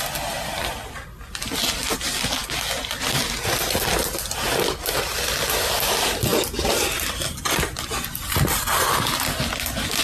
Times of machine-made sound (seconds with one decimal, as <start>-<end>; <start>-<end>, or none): none

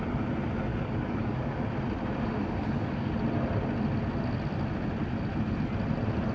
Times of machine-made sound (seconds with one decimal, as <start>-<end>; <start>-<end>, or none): 0.7-1.6; 2.4-3.1

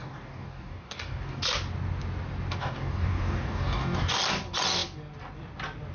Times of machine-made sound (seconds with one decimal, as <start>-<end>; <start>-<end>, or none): 0.0-1.4; 2.6-4.2

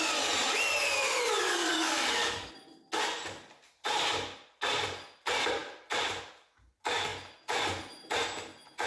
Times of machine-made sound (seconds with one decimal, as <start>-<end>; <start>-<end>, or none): 1.5-2.5

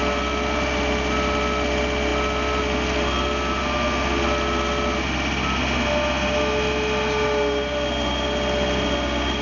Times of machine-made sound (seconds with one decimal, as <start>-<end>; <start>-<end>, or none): none

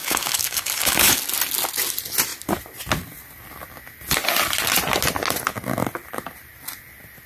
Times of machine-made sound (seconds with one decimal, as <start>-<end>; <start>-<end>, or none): 0.0-1.2

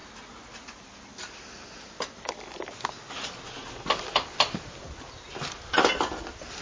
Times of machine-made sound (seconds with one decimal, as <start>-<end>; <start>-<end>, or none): none